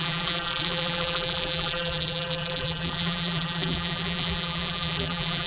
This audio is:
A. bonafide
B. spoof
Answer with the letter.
B